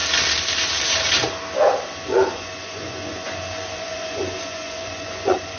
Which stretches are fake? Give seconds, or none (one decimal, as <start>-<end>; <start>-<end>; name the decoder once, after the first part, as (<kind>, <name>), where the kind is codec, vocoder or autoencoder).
2.1-5.6 (vocoder, Vocos)